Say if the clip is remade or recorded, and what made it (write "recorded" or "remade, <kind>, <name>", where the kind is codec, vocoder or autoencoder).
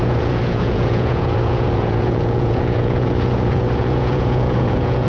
remade, vocoder, Vocos